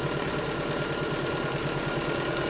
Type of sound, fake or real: real